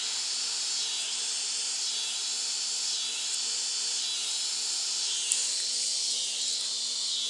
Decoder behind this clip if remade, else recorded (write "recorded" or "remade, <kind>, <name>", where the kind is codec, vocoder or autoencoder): recorded